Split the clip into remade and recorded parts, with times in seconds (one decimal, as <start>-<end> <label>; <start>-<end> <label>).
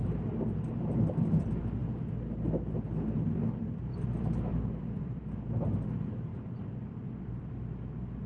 0.0-4.5 recorded; 4.5-5.3 remade; 5.3-6.3 recorded; 6.3-7.4 remade; 7.4-8.3 recorded